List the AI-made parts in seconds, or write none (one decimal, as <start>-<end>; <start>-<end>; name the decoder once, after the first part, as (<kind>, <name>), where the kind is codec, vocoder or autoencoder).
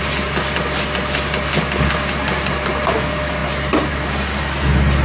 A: none